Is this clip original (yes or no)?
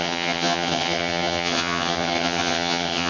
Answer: no